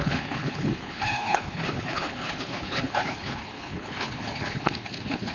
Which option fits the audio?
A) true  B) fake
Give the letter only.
B